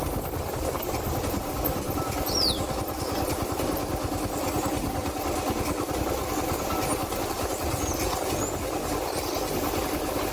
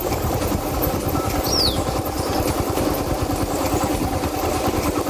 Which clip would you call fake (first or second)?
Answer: second